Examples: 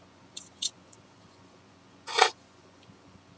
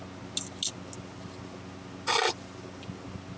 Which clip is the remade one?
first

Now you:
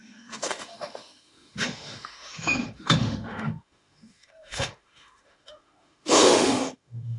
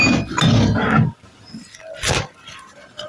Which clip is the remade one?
first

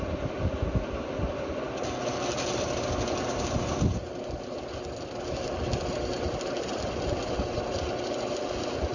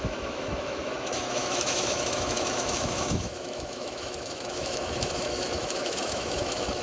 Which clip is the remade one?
second